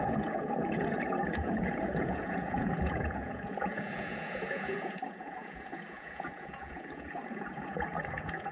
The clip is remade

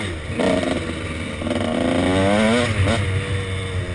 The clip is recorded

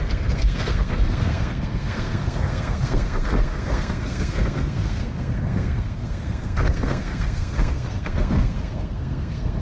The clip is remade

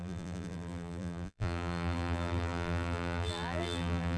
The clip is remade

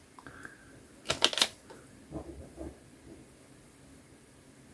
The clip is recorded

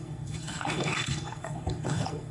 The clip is remade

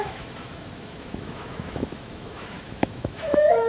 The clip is remade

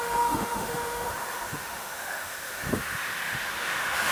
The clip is remade